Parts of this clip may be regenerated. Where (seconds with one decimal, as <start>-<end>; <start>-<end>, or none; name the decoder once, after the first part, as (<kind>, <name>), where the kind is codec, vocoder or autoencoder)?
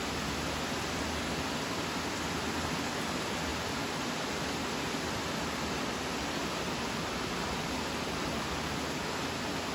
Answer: none